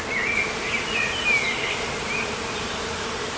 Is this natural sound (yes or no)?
yes